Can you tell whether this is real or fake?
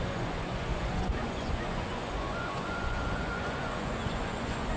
fake